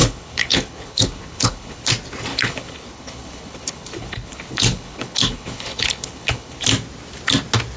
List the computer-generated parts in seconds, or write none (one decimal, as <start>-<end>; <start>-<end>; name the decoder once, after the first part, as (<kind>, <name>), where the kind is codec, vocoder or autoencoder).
0.0-1.9 (codec, HILCodec); 2.3-6.6